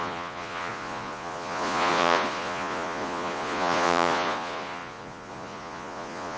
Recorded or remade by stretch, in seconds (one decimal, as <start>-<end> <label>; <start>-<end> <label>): 0.0-6.4 remade